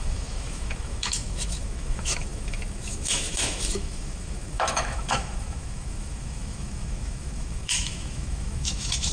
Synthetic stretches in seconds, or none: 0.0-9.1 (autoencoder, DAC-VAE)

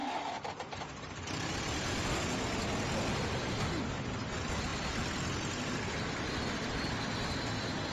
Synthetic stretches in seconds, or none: 0.0-2.6 (vocoder, BigVGAN v2); 4.7-6.9

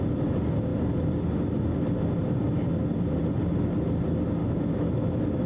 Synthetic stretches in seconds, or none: 4.4-5.5 (autoencoder, DAC-VAE)

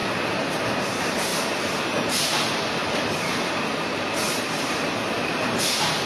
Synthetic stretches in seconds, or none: 0.5-2.8 (vocoder, BigVGAN v2); 4.3-6.1

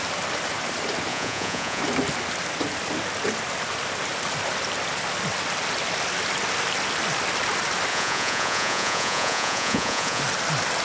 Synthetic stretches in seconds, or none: 1.1-1.8 (vocoder, Vocos); 7.9-10.2

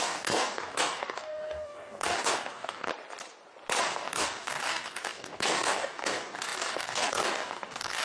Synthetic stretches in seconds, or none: 0.0-2.9 (codec, DAC); 3.8-8.0